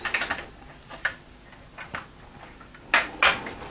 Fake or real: real